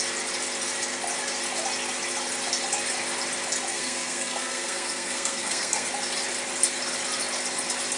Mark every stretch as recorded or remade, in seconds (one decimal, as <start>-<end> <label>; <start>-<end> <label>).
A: 0.0-3.7 recorded; 3.7-5.9 remade; 5.9-8.0 recorded